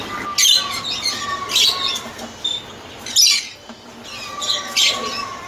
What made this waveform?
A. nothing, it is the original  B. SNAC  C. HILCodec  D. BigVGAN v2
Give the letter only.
A